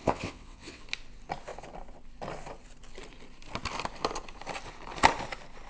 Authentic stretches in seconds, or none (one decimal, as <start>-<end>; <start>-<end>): 0.8-5.7